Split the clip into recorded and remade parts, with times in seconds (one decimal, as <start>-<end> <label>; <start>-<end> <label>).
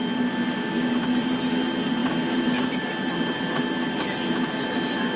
0.0-5.2 recorded